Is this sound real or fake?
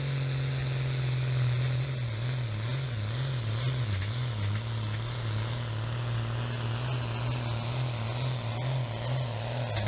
real